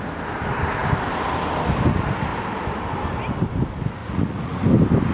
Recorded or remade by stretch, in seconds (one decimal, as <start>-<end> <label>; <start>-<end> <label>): 0.0-4.0 recorded; 4.0-4.6 remade; 4.6-5.1 recorded